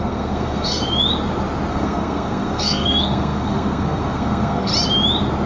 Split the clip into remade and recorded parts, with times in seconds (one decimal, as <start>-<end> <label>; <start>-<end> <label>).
0.0-0.8 remade; 0.8-1.7 recorded; 1.7-4.7 remade; 4.7-5.5 recorded